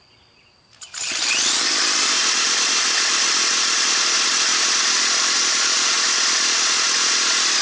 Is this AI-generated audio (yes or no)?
no